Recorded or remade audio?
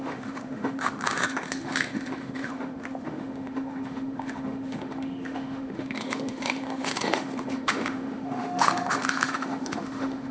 remade